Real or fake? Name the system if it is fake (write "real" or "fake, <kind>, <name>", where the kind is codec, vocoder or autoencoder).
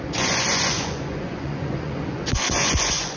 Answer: fake, vocoder, Vocos